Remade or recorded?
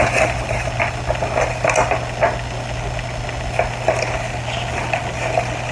recorded